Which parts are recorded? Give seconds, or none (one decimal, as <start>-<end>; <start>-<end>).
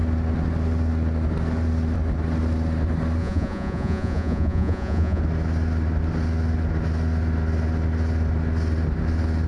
0.0-3.2; 5.2-9.5